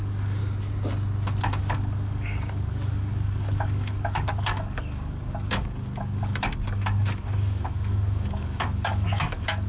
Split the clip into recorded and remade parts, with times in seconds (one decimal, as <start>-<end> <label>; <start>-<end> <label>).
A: 0.0-0.4 remade; 0.4-1.6 recorded; 1.6-9.7 remade